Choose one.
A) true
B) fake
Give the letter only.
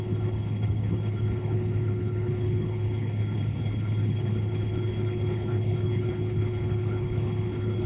B